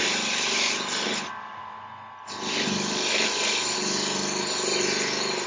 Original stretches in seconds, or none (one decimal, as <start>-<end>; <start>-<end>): 1.1-4.4